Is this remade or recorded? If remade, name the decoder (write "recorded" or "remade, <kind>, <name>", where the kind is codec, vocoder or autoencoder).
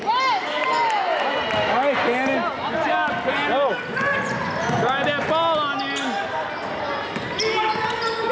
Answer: recorded